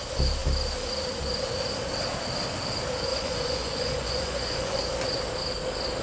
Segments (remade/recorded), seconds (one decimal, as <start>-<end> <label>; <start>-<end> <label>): 0.0-3.1 recorded; 3.1-4.8 remade; 4.8-6.0 recorded